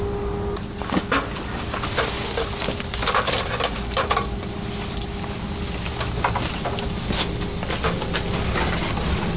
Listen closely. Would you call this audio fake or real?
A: real